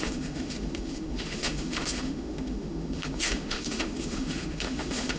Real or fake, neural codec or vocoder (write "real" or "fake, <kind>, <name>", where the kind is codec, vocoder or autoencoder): fake, autoencoder, DAC-VAE